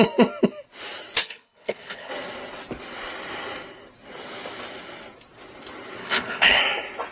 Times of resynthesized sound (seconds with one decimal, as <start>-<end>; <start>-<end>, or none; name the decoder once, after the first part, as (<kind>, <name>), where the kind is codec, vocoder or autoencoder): 1.2-2.1 (codec, HILCodec); 6.0-6.6